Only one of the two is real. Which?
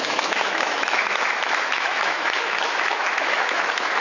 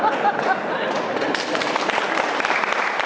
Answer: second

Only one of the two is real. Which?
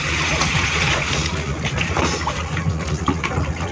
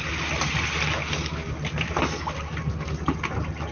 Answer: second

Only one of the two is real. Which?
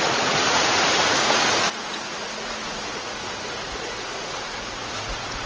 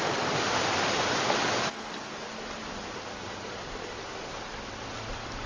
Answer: second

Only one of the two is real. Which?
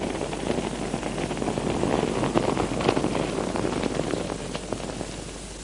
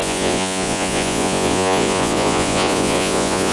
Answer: first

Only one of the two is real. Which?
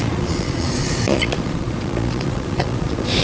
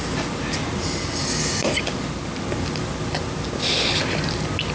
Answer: second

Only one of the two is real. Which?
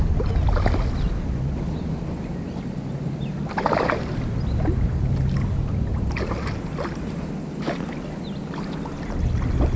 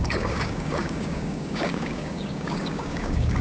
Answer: first